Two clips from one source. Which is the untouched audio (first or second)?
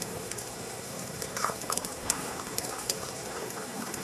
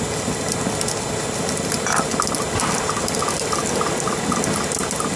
second